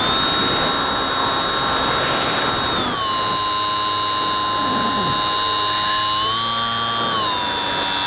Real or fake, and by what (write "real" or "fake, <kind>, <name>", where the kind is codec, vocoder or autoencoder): real